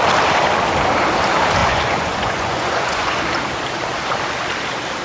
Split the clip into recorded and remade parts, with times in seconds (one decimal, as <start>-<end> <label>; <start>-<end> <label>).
0.0-1.6 recorded; 1.6-3.2 remade; 3.2-5.0 recorded